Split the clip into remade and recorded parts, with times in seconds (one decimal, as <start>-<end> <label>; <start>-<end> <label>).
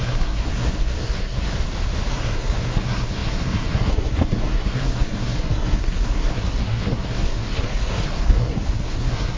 0.0-1.5 remade; 1.5-2.1 recorded; 2.1-9.4 remade